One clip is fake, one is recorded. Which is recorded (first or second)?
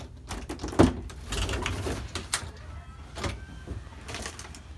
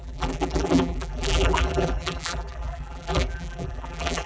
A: first